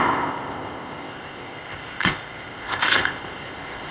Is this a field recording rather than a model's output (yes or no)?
no